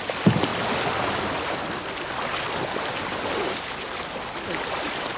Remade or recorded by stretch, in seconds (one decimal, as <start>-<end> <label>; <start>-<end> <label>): 0.0-5.2 recorded